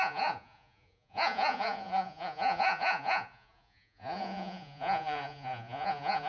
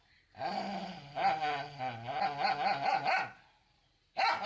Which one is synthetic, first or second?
first